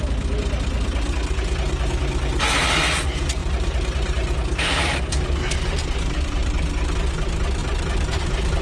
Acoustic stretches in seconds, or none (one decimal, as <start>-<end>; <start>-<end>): 0.0-3.4; 6.6-7.6